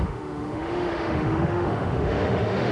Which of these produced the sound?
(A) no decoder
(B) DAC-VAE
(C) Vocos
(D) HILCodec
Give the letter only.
B